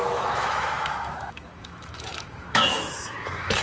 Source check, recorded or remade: remade